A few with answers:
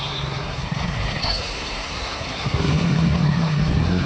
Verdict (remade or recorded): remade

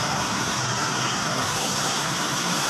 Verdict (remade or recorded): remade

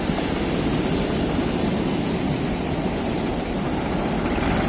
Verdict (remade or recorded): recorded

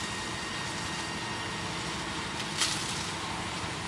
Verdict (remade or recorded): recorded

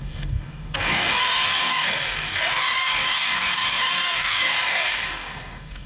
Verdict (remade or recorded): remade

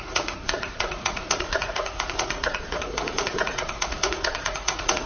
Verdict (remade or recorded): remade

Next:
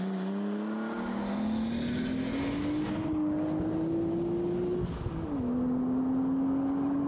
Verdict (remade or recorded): recorded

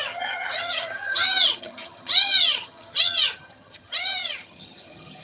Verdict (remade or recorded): remade